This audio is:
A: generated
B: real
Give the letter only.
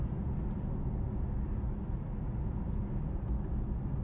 B